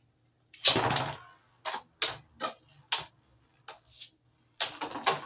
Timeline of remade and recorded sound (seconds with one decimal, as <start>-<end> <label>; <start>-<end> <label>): 0.0-5.3 recorded